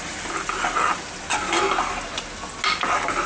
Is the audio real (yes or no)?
yes